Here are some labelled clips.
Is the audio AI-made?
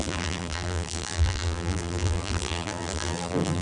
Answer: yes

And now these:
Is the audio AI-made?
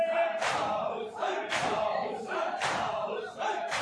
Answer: yes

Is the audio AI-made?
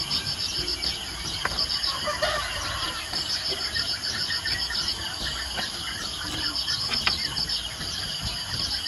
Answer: yes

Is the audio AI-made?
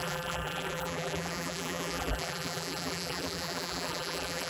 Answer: yes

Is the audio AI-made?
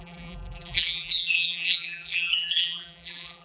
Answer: yes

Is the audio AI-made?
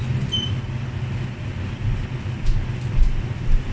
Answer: no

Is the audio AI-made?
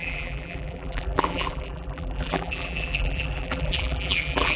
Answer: yes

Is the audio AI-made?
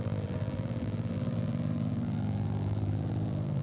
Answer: yes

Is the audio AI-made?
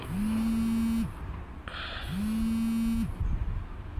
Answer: no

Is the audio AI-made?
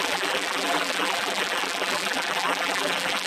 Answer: yes